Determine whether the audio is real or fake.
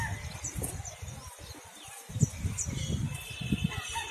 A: fake